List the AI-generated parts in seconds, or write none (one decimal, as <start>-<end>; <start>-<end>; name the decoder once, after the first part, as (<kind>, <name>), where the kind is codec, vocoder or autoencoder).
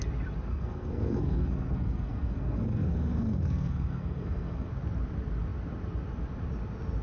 0.5-4.7 (codec, SNAC)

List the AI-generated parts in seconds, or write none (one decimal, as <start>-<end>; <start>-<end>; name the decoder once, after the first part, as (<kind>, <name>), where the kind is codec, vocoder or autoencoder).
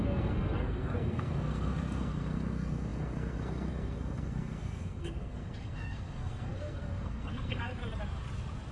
0.0-7.8 (codec, SNAC)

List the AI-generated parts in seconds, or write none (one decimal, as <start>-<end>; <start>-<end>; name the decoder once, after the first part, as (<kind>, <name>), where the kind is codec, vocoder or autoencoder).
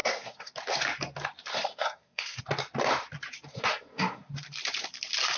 0.0-0.5 (codec, SNAC); 1.5-2.4; 3.5-4.3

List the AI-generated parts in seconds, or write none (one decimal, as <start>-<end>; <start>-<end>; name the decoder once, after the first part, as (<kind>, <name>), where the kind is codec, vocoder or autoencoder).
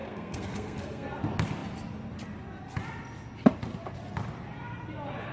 0.0-1.2 (codec, SNAC)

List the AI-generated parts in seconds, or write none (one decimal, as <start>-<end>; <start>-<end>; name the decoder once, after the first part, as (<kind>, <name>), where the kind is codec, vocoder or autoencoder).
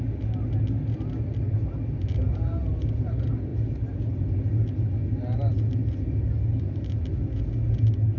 none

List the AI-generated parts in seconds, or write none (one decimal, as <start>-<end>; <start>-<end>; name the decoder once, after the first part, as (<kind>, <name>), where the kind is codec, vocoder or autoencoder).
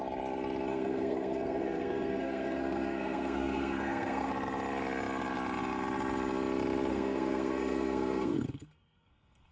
0.7-4.3 (codec, SNAC); 6.9-9.5